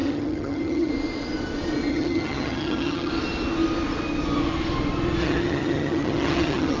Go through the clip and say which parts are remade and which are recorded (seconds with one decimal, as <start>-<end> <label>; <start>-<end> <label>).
0.0-0.9 remade; 0.9-1.9 recorded; 1.9-3.1 remade; 3.1-5.2 recorded; 5.2-6.8 remade